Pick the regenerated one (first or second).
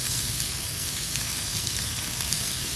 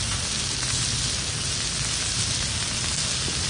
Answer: first